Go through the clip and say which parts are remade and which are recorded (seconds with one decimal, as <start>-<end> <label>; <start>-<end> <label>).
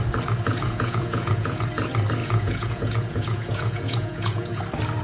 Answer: 0.0-0.5 recorded; 0.5-1.6 remade; 1.6-2.2 recorded; 2.2-4.6 remade; 4.6-5.0 recorded